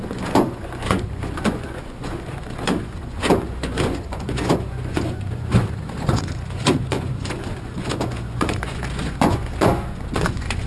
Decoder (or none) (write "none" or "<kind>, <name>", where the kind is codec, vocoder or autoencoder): vocoder, Vocos